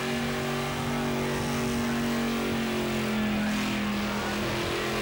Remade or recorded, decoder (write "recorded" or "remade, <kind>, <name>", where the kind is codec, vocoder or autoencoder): recorded